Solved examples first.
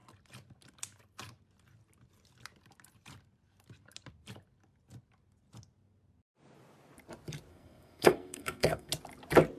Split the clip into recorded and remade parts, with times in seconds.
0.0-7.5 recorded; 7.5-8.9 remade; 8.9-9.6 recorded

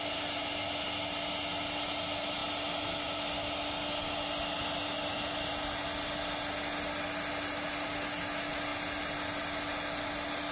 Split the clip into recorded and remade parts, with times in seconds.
0.0-10.5 recorded

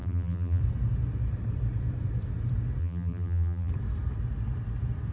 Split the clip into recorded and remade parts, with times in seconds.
0.0-0.6 remade; 0.6-2.8 recorded; 2.8-3.7 remade; 3.7-5.1 recorded

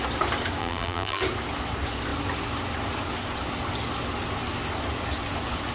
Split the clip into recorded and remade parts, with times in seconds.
0.0-0.6 recorded; 0.6-1.2 remade; 1.2-5.7 recorded